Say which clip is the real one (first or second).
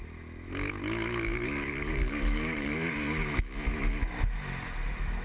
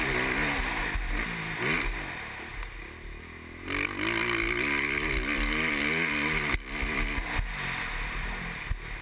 second